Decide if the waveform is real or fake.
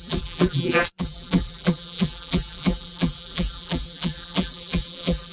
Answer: fake